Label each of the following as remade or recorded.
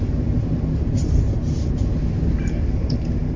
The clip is remade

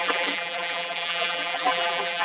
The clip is remade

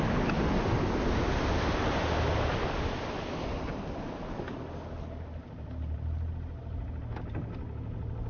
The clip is recorded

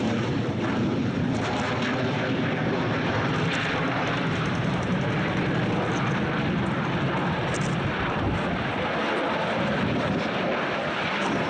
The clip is remade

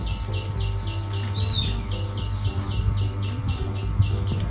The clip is recorded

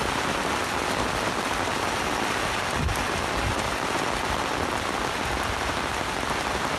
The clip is recorded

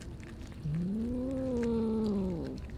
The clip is recorded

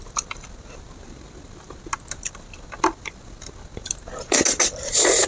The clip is recorded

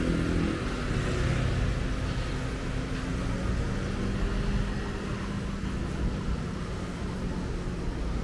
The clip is recorded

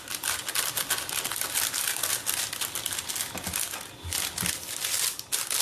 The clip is recorded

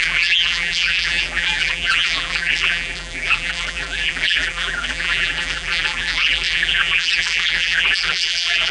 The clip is remade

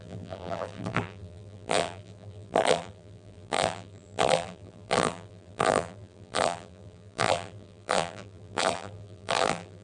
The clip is remade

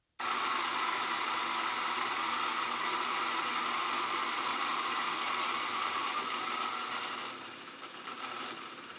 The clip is remade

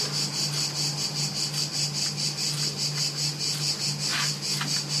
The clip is recorded